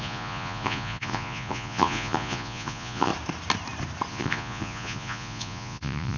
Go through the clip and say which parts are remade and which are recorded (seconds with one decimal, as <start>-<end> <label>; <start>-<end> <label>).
0.0-3.1 remade; 3.1-4.1 recorded; 4.1-6.2 remade